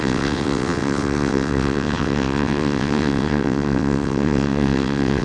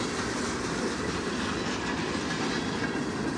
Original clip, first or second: second